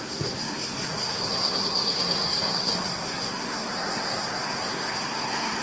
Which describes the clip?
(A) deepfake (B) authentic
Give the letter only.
A